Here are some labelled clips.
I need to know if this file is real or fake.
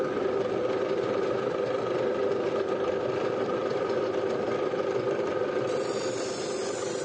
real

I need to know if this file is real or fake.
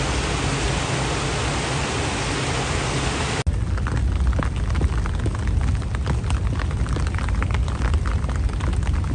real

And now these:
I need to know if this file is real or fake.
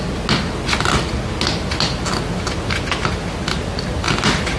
real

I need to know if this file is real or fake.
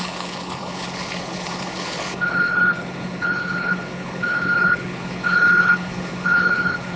fake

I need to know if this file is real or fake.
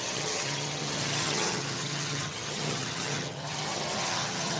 fake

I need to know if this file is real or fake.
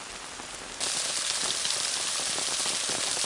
real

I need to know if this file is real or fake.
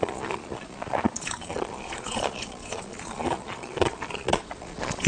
fake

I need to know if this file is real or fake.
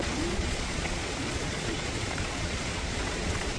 fake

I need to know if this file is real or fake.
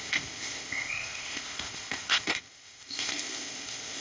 fake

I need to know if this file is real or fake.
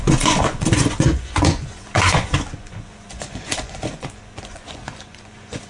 fake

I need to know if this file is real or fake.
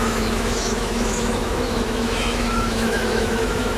fake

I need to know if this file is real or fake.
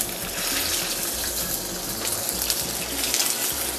real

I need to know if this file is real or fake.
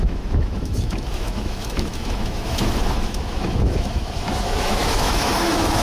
fake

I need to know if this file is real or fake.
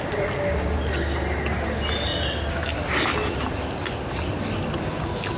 real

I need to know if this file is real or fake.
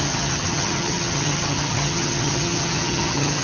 fake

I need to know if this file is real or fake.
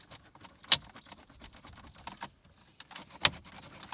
real